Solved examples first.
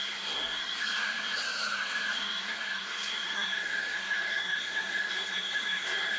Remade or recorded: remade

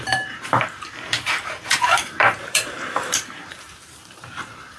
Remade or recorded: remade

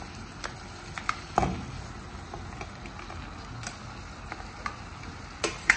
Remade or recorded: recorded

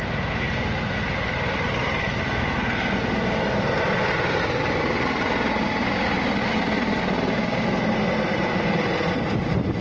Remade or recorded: recorded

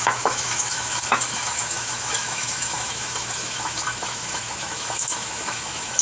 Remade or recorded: remade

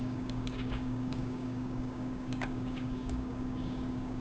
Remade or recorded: remade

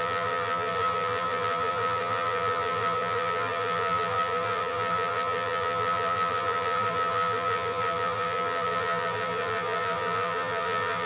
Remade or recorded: remade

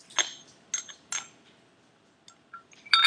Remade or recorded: recorded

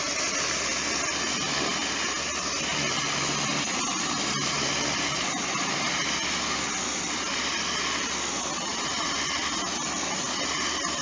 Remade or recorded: recorded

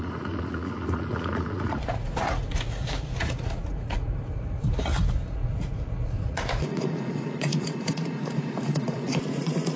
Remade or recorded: remade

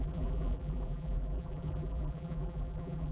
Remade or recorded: remade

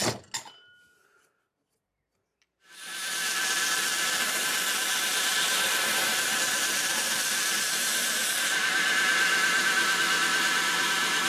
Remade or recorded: recorded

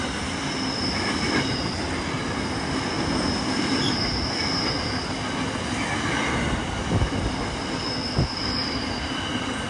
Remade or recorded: recorded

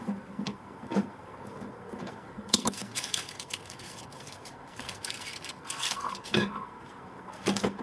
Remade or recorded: remade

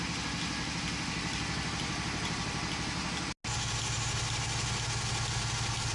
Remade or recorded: recorded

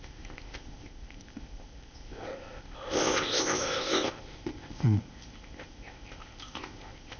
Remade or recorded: remade